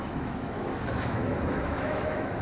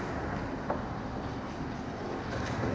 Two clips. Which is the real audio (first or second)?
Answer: second